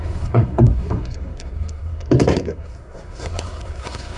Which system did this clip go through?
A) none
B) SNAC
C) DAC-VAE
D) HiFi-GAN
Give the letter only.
B